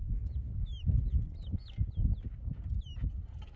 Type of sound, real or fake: real